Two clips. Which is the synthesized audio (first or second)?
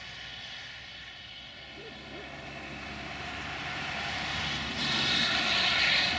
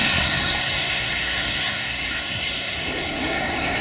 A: second